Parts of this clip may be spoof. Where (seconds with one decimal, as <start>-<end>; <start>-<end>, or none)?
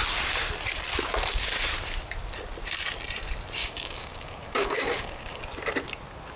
3.6-5.4